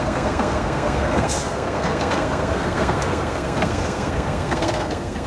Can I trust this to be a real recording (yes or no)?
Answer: no